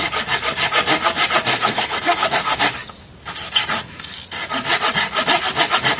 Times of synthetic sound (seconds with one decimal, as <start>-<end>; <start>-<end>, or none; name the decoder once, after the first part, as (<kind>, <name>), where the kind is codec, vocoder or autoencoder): 1.5-2.6 (codec, SNAC)